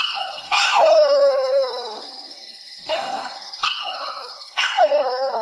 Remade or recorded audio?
remade